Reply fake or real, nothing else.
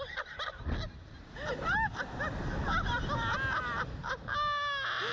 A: real